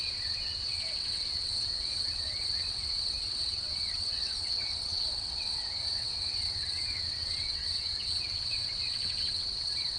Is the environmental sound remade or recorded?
remade